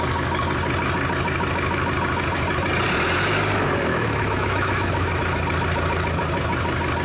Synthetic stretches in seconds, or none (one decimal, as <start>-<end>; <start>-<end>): 3.9-5.1